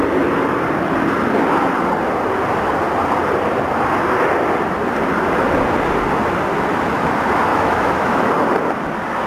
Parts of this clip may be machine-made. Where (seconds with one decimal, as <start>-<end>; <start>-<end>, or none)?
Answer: 7.5-8.3